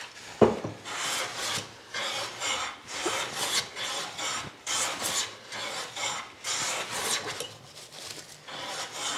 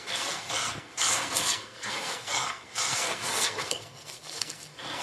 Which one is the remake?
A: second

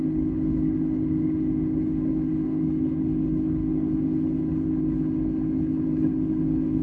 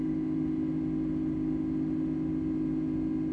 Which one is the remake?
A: first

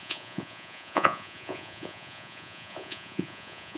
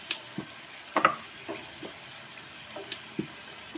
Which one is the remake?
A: first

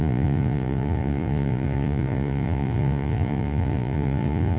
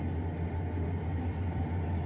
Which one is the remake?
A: first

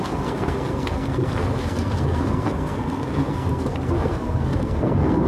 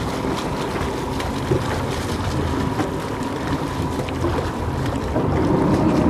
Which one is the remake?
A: first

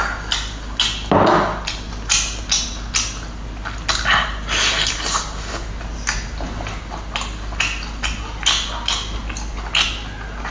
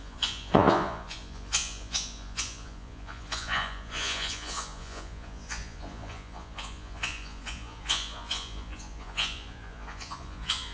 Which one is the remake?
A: second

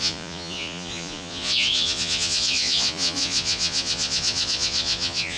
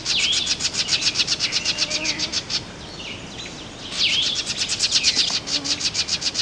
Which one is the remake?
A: first